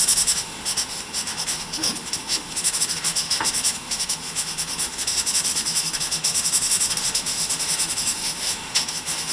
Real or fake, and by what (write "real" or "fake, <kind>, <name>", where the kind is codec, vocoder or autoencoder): fake, autoencoder, DAC-VAE